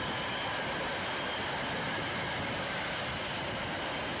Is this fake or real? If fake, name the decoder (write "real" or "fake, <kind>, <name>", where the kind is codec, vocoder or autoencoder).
real